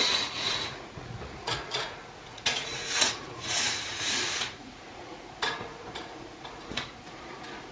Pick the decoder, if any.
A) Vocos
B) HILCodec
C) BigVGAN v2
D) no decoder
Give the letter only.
A